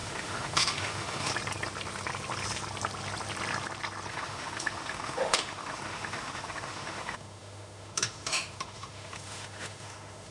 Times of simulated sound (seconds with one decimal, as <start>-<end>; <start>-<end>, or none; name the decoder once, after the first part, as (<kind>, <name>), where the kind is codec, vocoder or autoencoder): 0.0-1.3 (autoencoder, DAC-VAE); 4.1-10.3